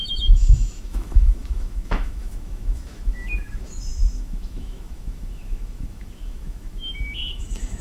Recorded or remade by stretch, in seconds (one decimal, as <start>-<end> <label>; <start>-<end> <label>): 0.0-7.8 remade